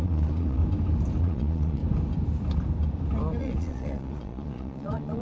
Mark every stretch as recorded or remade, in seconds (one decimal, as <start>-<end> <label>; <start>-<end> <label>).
0.0-0.6 remade; 0.6-1.2 recorded; 1.2-1.8 remade; 1.8-3.4 recorded; 3.4-5.2 remade